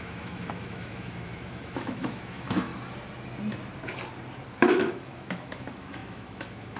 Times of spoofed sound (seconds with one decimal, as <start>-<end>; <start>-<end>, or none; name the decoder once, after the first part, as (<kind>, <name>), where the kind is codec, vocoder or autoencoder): 0.0-2.7 (autoencoder, DAC-VAE); 4.7-6.8